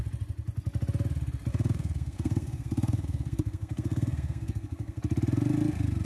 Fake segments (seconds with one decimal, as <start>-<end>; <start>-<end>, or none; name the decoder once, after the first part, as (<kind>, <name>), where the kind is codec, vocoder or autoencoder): 1.5-5.0 (codec, SNAC)